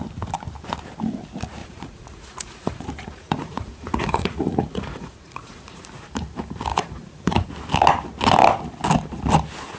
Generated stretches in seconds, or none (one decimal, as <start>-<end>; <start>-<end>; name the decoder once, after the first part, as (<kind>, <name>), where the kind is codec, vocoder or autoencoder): 1.6-5.8 (vocoder, Vocos); 6.7-7.5